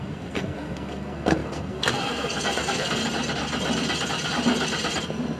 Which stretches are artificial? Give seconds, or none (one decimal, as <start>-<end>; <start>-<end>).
0.0-3.0